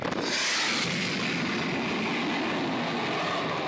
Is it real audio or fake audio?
real